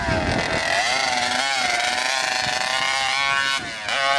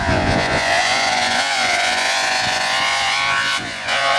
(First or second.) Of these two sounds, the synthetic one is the second